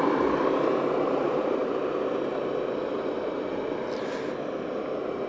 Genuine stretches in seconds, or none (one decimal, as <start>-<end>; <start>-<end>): 0.0-5.3